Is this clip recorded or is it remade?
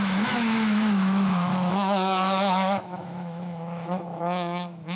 remade